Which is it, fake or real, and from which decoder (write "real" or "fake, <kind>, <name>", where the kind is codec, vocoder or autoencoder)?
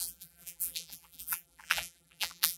fake, vocoder, BigVGAN v2